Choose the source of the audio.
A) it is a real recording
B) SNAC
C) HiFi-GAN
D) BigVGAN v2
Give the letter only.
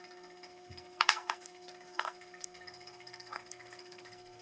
B